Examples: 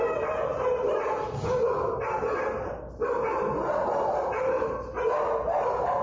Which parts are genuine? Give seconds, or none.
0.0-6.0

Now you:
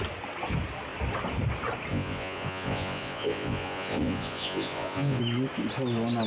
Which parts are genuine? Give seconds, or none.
0.0-1.9; 5.2-6.3